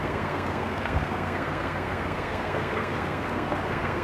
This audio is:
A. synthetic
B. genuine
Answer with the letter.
A